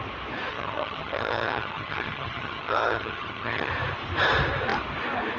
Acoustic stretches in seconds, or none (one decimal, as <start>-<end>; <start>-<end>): 0.0-0.5; 3.7-5.4